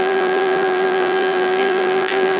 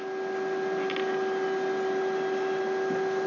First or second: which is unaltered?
second